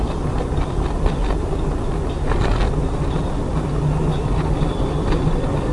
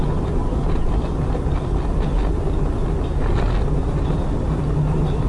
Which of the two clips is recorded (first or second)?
second